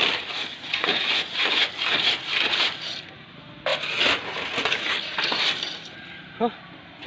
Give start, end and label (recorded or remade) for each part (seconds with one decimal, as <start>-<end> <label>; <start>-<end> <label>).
0.0-0.5 recorded; 0.5-1.7 remade; 1.7-7.1 recorded